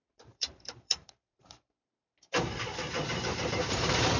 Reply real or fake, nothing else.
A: fake